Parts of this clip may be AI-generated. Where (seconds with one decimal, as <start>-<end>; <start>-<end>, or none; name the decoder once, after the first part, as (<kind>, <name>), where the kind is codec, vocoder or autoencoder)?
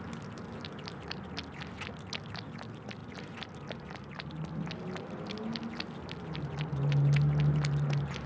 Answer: none